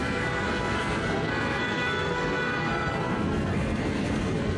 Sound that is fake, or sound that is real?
fake